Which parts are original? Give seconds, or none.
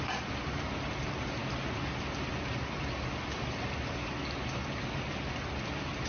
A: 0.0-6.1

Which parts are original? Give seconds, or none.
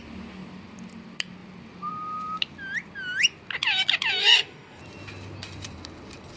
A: 0.0-4.2; 4.8-6.4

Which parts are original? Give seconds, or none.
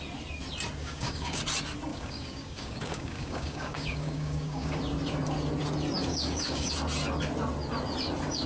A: 0.0-0.8; 1.4-1.9; 4.8-6.1; 6.7-8.5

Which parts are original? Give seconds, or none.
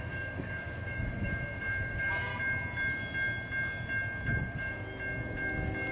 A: 2.3-4.4; 4.9-5.9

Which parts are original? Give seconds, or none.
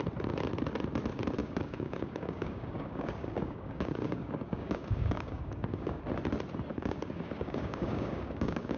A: 0.0-1.4; 6.0-6.7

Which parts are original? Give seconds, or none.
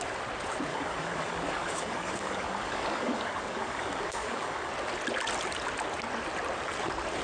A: 0.0-0.7; 4.7-7.2